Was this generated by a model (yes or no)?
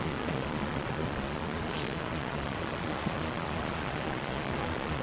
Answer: yes